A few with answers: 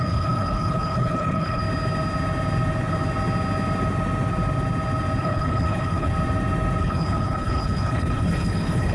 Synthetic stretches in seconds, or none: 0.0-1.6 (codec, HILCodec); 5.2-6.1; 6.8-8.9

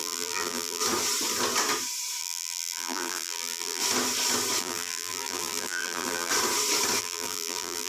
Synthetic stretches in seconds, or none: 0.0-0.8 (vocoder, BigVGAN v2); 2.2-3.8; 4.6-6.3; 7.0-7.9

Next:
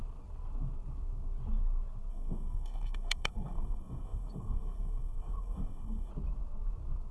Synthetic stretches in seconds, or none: 2.1-6.1 (codec, SNAC)